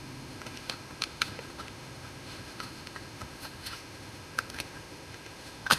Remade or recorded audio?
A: remade